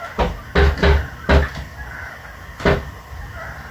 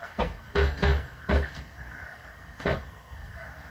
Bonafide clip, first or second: first